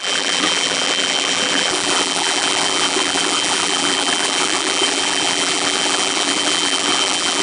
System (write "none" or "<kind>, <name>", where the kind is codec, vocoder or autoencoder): vocoder, BigVGAN v2